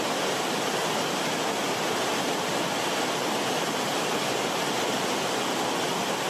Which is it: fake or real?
real